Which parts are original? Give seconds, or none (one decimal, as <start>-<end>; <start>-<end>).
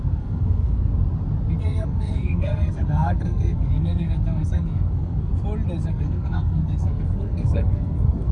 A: 0.9-1.6; 5.3-5.9